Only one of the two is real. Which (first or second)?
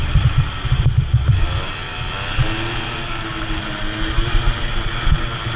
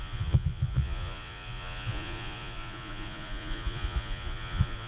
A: first